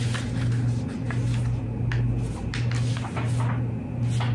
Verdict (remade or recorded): recorded